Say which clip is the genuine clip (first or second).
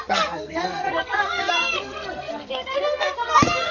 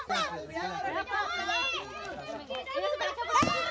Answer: second